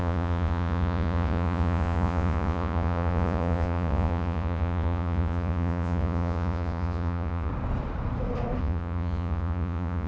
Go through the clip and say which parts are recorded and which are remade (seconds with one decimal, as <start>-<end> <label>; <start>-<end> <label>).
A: 0.0-7.5 remade; 7.5-8.6 recorded; 8.6-10.1 remade